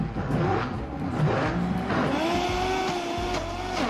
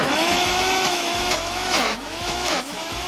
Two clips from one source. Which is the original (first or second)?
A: first